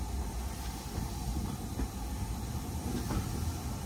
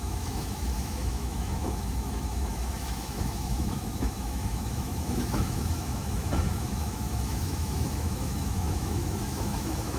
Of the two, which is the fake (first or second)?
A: second